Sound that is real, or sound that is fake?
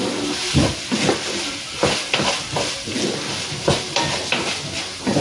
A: real